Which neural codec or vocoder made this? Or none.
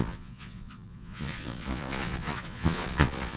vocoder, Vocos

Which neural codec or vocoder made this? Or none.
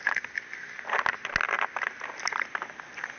none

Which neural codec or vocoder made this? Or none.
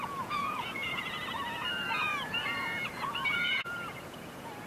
vocoder, Vocos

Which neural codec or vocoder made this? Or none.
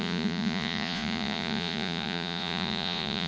vocoder, Vocos